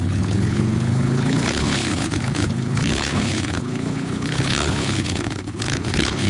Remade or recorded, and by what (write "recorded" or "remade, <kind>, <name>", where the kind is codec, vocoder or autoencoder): remade, codec, HILCodec